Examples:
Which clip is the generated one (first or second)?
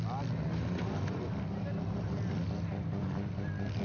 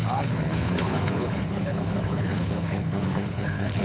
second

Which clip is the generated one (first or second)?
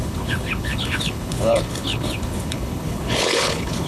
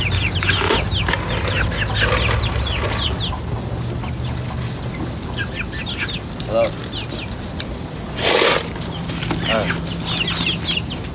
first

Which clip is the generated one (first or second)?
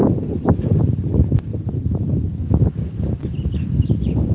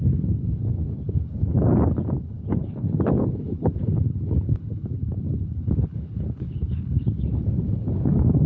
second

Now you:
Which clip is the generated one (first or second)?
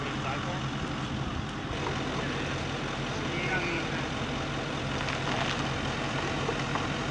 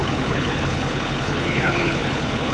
second